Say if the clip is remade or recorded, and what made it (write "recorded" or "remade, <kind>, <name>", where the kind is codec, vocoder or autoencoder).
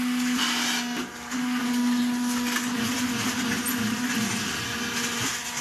recorded